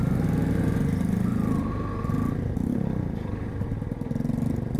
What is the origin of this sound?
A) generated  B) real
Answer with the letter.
B